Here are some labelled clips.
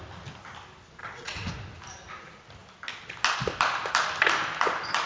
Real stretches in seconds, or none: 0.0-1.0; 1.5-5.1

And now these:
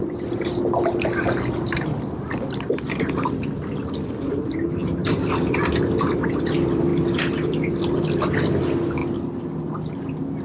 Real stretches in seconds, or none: 0.0-4.8; 5.9-10.4

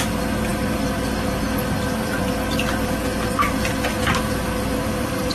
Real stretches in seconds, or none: 0.0-5.3

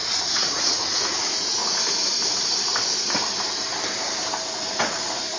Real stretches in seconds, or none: 1.6-4.6